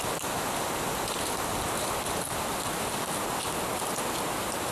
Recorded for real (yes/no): yes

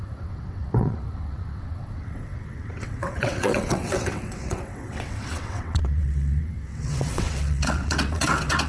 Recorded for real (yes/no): no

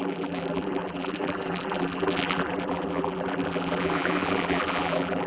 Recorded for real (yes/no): no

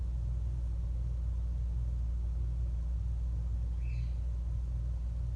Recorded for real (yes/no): yes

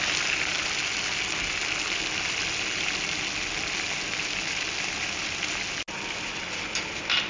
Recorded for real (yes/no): yes